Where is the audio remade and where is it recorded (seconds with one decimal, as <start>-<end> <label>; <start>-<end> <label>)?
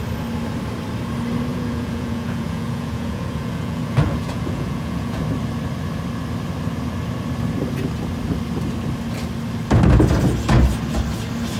0.0-1.5 recorded; 1.5-5.2 remade; 5.2-11.6 recorded